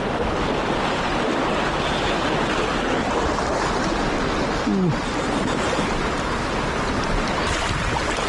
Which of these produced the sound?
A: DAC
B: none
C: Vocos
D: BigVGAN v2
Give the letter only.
B